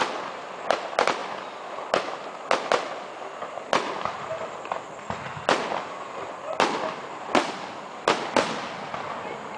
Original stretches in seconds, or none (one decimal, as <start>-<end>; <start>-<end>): 0.0-9.6